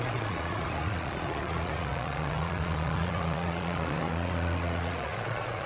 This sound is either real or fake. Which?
fake